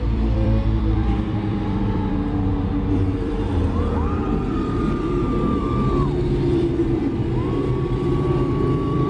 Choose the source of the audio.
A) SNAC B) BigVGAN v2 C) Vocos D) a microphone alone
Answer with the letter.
B